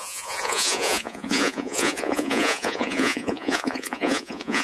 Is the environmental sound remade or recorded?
remade